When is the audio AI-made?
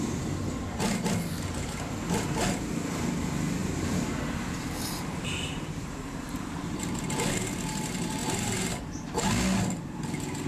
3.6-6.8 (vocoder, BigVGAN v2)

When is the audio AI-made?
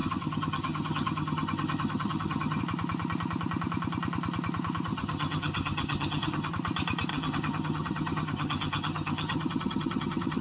0.0-2.6 (vocoder, HiFi-GAN); 4.9-6.5; 7.1-10.4